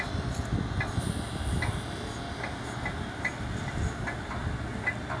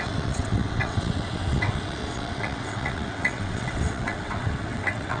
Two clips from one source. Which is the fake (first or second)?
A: second